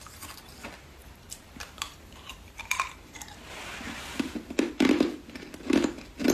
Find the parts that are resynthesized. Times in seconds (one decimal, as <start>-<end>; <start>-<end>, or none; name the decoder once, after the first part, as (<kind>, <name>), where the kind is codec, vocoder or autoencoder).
1.0-2.6 (vocoder, BigVGAN v2)